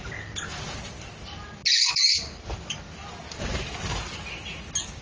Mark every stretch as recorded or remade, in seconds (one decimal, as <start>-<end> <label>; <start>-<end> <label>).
0.0-5.0 recorded